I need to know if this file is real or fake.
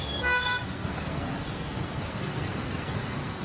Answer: fake